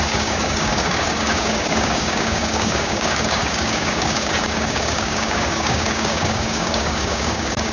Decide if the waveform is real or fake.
fake